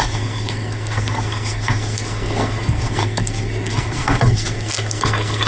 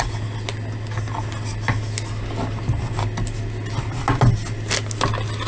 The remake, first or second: first